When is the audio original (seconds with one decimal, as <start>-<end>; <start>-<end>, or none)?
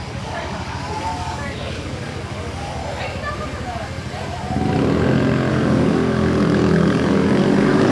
2.8-5.5